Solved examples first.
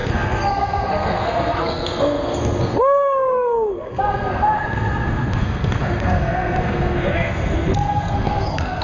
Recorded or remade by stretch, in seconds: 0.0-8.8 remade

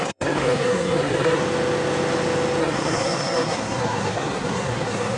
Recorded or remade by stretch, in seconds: 0.0-1.4 remade; 1.4-2.6 recorded; 2.6-5.2 remade

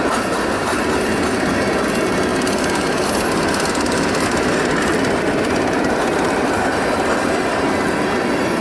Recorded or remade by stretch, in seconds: 0.0-8.6 recorded

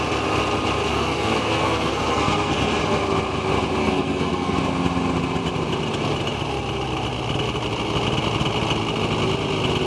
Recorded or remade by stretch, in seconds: 0.0-0.9 recorded; 0.9-2.8 remade; 2.8-3.8 recorded; 3.8-4.6 remade; 4.6-9.9 recorded

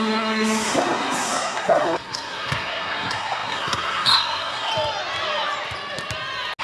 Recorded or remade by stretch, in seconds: 0.0-4.7 remade; 4.7-6.6 recorded

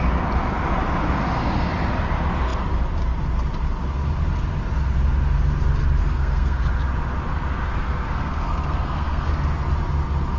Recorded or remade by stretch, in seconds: 0.0-6.0 recorded; 6.0-6.6 remade; 6.6-7.7 recorded; 7.7-9.3 remade; 9.3-10.4 recorded